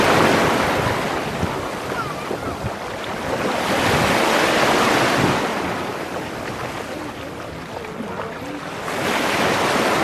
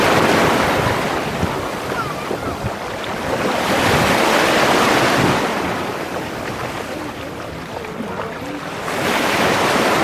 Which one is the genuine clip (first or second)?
first